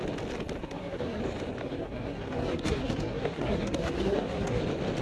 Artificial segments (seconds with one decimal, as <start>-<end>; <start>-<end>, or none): 0.6-1.2; 1.6-4.6